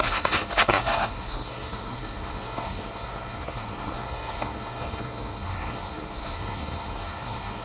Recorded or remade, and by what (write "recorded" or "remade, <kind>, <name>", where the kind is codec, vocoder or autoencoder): remade, codec, SNAC